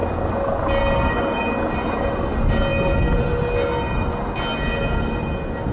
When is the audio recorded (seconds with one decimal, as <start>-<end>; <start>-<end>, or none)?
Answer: 0.0-5.7